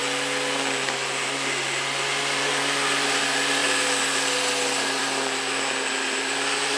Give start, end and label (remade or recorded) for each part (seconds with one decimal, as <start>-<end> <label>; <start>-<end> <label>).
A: 0.0-2.4 recorded; 2.4-6.8 remade